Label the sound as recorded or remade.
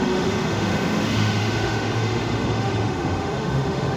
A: remade